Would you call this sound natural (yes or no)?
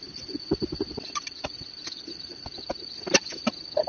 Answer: yes